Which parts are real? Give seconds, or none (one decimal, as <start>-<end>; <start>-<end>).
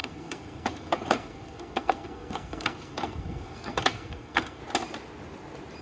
4.6-5.8